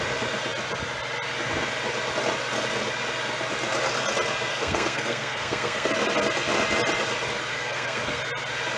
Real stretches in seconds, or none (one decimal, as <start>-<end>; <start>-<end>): 0.0-4.5; 5.9-7.5; 8.2-8.8